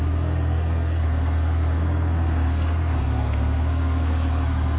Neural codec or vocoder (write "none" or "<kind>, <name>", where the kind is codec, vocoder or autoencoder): codec, SNAC